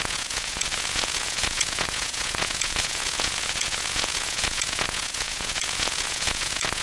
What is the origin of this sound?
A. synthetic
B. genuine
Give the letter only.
A